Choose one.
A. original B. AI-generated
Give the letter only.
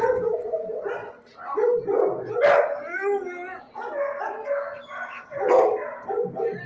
A